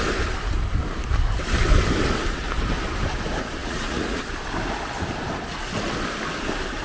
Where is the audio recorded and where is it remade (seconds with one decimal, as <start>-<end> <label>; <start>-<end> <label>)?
0.0-3.6 recorded; 3.6-4.2 remade; 4.2-6.8 recorded